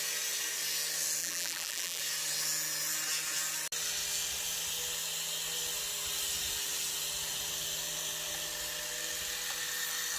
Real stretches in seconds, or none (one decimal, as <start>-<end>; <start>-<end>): 0.0-1.2; 2.0-10.2